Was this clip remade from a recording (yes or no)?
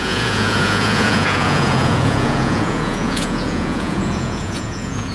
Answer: yes